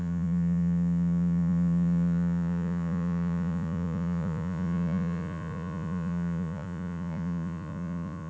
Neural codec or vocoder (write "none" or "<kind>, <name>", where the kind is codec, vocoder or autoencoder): vocoder, Vocos